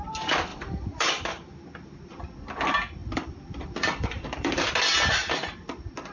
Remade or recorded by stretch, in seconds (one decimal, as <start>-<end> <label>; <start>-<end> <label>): 0.0-0.5 recorded; 0.5-1.1 remade; 1.1-3.0 recorded; 3.0-4.7 remade; 4.7-6.1 recorded